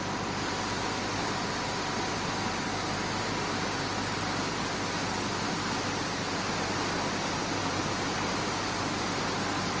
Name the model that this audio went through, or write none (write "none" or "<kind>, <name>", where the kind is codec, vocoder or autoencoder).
none